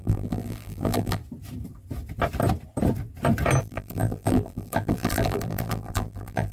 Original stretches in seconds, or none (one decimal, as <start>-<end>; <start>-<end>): 1.2-3.6